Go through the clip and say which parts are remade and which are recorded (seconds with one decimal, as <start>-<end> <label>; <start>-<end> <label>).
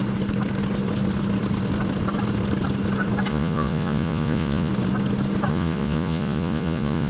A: 0.0-3.3 recorded; 3.3-4.7 remade; 4.7-5.5 recorded; 5.5-7.1 remade